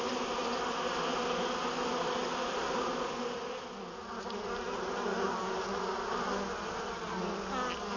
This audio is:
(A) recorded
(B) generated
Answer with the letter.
A